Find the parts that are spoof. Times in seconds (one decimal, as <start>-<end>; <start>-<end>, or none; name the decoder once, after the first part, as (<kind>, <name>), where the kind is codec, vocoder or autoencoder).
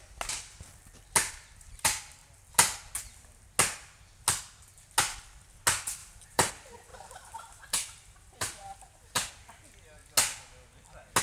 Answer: 6.0-6.5 (vocoder, BigVGAN v2); 6.9-9.3